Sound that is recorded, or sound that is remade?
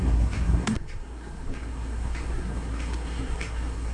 remade